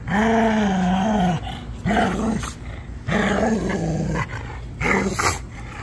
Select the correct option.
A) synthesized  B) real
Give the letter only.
B